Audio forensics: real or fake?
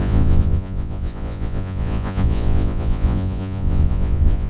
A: fake